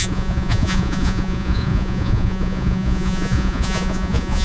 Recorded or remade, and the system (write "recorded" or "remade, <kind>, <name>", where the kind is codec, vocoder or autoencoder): remade, vocoder, Vocos